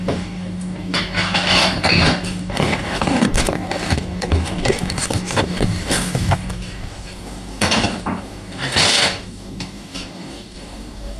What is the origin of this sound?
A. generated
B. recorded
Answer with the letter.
A